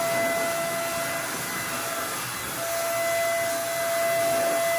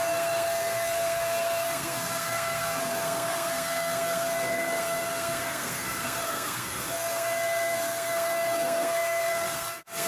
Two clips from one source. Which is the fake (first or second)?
second